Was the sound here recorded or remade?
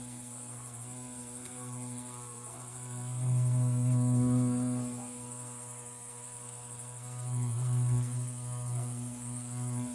remade